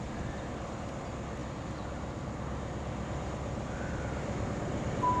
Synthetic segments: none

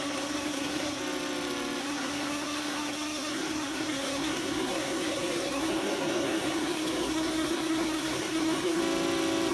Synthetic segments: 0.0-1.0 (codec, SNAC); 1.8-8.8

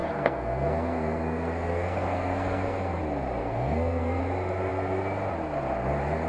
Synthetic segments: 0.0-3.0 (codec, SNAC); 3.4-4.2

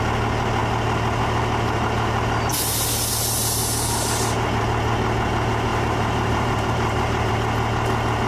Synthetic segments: 5.7-7.3 (vocoder, BigVGAN v2)

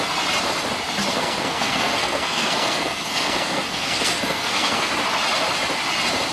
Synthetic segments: 1.1-4.9 (codec, SNAC)

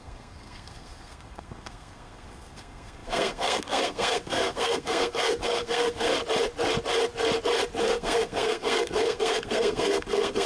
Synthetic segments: 0.0-6.1 (codec, SNAC); 7.8-10.5

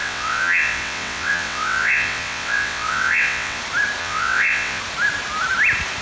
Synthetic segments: 0.0-3.6 (vocoder, WaveNeXt); 4.0-4.8

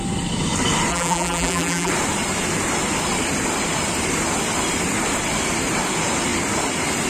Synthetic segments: 0.9-1.9 (vocoder, BigVGAN v2)